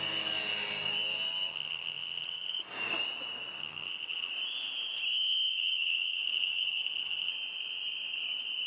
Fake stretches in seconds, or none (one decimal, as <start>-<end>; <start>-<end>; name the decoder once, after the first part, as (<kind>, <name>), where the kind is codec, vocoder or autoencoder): 1.5-2.6 (vocoder, HiFi-GAN); 3.6-4.3; 5.5-7.3